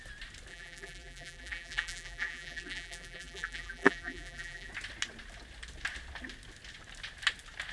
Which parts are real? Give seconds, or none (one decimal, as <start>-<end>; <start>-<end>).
0.0-0.5; 4.7-7.7